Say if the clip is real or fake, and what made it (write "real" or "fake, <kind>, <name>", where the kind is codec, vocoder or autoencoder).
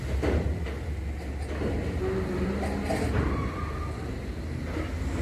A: real